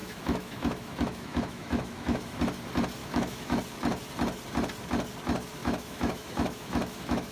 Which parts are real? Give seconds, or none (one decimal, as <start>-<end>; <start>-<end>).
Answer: 2.4-3.0; 3.6-5.6